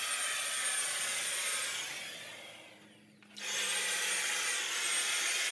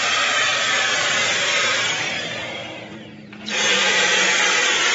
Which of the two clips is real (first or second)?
first